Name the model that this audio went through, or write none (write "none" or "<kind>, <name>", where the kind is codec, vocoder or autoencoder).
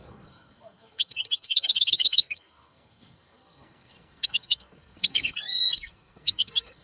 codec, SNAC